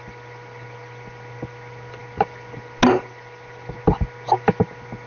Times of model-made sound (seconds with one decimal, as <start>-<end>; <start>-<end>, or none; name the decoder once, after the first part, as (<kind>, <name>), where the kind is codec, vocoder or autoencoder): none

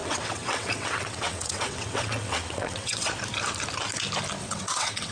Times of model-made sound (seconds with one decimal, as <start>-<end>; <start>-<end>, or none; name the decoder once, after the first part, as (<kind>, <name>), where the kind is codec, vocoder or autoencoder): 0.0-3.1 (vocoder, WaveNeXt); 4.4-5.1

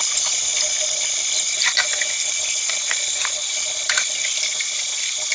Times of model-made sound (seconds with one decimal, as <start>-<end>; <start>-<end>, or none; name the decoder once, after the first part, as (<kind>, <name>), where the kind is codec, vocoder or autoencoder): none

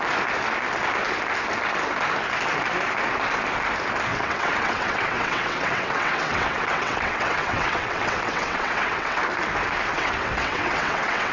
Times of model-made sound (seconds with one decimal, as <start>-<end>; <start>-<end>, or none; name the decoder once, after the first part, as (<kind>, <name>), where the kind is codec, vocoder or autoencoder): 4.1-9.2 (vocoder, WaveNeXt); 9.9-11.3